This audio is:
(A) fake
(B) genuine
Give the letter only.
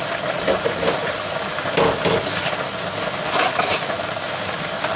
B